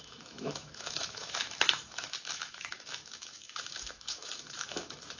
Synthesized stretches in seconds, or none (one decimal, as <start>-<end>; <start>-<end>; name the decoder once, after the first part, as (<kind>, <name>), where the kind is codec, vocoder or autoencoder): 0.0-5.2 (autoencoder, DAC-VAE)